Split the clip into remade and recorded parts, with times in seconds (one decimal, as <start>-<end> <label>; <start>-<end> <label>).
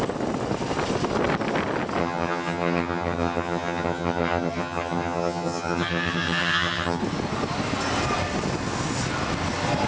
0.0-2.0 recorded; 2.0-7.0 remade; 7.0-9.9 recorded